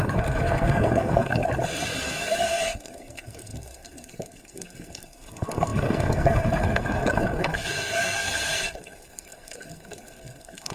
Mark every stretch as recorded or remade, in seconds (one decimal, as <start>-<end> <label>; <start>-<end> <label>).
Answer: 0.0-1.4 remade; 1.4-2.0 recorded; 2.0-10.7 remade